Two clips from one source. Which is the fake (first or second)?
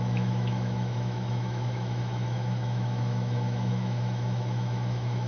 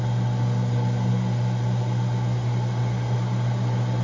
first